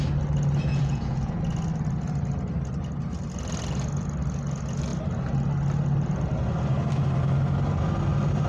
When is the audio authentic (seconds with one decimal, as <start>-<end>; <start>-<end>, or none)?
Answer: 0.0-0.7; 1.4-8.5